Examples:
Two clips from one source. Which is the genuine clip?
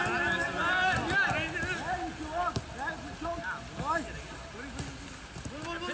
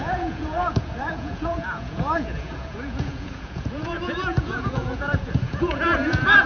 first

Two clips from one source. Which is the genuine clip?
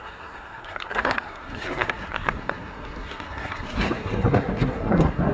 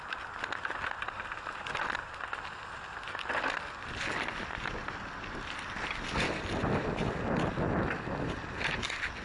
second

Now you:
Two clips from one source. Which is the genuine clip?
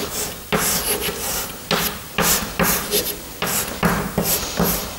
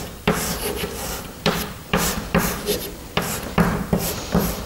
first